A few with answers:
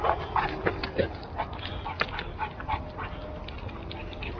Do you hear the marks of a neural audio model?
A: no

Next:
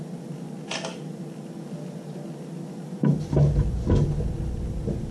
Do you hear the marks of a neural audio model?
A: no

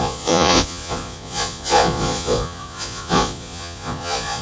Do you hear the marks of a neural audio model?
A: yes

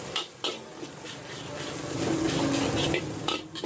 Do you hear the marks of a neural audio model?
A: no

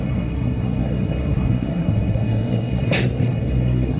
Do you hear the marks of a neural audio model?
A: yes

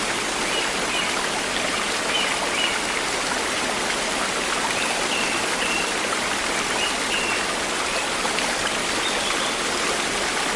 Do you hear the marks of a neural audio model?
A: no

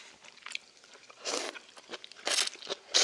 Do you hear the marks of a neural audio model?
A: no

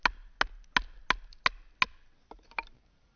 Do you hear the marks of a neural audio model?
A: no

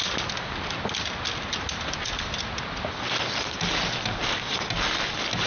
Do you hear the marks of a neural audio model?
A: no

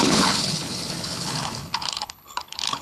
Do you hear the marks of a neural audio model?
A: yes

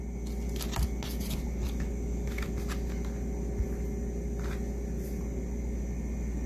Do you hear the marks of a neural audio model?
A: no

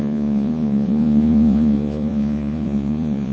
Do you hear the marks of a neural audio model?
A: yes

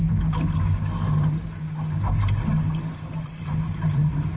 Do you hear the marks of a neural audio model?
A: no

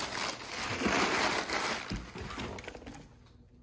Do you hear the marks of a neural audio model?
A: no